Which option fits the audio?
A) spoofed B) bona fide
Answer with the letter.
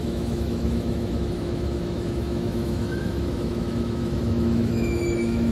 A